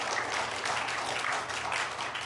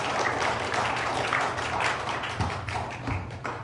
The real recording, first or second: first